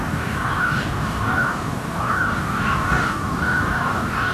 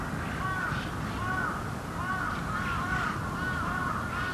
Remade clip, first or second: first